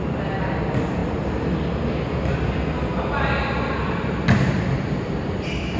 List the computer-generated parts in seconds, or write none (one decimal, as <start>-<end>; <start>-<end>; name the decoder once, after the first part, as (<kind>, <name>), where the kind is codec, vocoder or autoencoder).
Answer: none